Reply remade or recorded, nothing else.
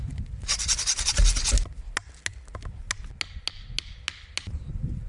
recorded